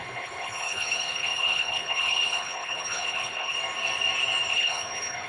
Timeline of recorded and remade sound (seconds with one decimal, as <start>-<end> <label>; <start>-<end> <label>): 0.0-3.6 remade; 3.6-4.5 recorded; 4.5-5.3 remade